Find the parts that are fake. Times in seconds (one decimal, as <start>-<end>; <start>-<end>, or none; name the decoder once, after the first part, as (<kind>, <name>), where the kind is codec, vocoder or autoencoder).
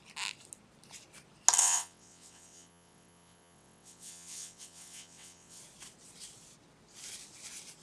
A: 1.6-5.6 (vocoder, WaveNeXt)